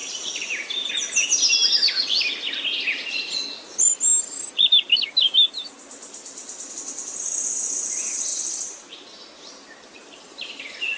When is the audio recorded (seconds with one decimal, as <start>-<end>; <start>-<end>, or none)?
0.9-8.3; 10.6-11.0